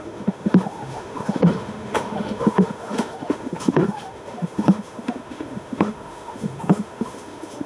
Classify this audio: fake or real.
fake